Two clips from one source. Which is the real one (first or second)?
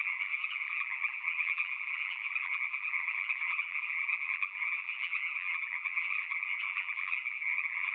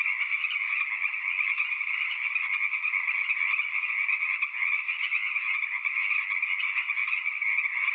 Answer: second